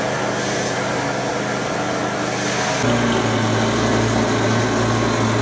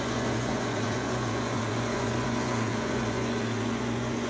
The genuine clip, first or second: first